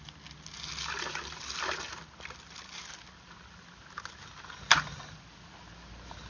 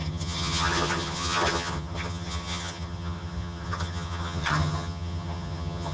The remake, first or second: second